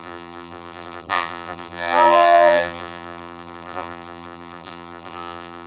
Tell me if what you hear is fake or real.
fake